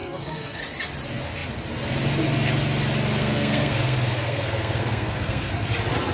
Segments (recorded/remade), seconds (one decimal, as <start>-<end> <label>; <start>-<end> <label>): 0.0-0.6 remade; 0.6-3.2 recorded; 3.2-5.5 remade; 5.5-6.1 recorded